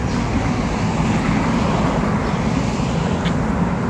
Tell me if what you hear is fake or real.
real